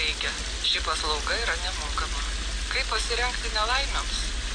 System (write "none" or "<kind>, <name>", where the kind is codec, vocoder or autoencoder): none